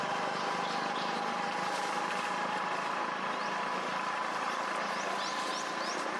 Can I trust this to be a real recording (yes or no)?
yes